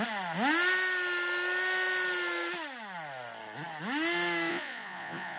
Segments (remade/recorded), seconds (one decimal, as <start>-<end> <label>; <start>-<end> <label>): 0.0-4.5 recorded; 4.5-5.4 remade